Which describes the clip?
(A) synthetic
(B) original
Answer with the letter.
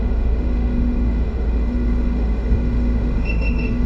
A